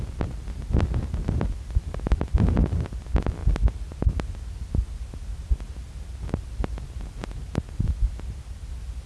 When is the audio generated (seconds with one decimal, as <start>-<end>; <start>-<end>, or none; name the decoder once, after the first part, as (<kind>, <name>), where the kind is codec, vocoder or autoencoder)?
none